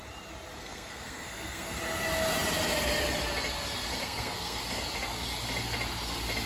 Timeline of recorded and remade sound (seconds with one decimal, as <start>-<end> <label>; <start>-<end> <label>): 0.0-0.6 recorded; 0.6-1.8 remade; 1.8-4.0 recorded; 4.0-4.6 remade; 4.6-6.5 recorded